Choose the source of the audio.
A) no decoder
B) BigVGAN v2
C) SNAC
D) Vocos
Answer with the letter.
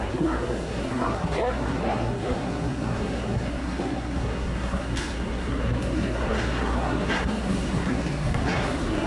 C